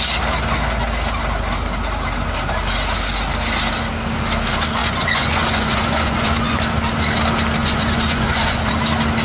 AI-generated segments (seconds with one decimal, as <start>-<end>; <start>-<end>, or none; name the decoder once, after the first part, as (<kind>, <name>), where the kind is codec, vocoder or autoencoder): 4.8-6.6 (vocoder, Vocos); 7.6-8.7